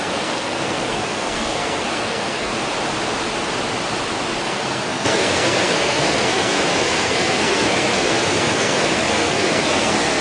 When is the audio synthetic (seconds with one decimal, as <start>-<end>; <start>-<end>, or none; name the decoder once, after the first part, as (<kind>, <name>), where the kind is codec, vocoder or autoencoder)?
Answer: 0.0-2.5 (codec, SNAC); 4.4-10.2